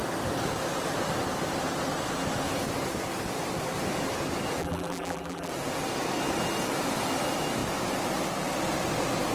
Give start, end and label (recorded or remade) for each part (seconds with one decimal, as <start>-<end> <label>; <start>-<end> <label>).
0.0-4.6 recorded; 4.6-5.5 remade; 5.5-9.3 recorded